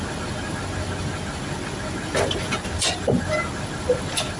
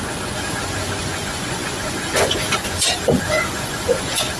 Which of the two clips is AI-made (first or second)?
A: second